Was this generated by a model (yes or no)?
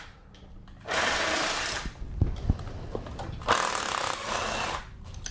no